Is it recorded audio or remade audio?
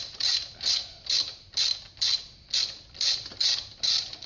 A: recorded